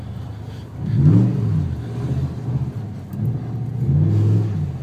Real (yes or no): yes